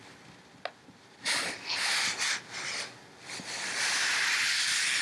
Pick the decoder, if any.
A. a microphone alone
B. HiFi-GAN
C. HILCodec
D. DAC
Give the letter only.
A